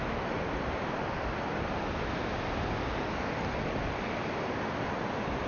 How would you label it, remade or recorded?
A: recorded